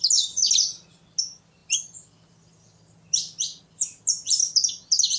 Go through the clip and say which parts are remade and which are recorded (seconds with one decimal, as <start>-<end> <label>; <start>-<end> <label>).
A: 0.0-0.4 remade; 0.4-1.2 recorded; 1.2-5.2 remade